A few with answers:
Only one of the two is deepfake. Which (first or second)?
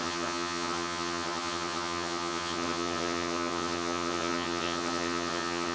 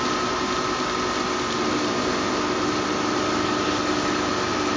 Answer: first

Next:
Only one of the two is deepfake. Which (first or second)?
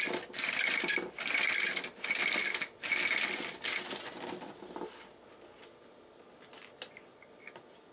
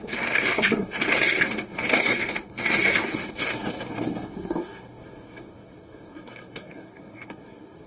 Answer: second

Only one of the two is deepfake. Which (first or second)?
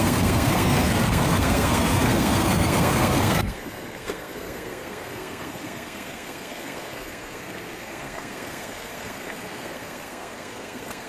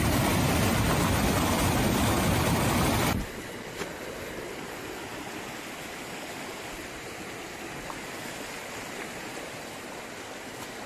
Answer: first